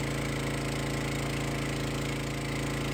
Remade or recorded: recorded